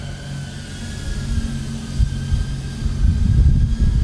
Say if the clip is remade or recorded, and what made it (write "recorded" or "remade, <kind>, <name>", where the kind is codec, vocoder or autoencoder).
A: recorded